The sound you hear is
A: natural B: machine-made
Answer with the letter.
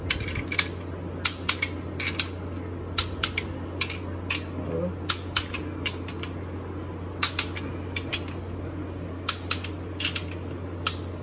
A